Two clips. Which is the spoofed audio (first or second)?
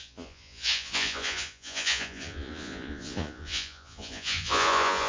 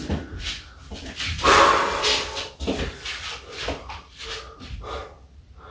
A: first